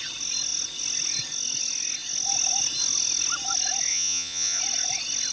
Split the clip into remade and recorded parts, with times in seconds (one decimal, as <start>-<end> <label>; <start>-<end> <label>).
0.0-3.9 recorded; 3.9-4.6 remade; 4.6-5.3 recorded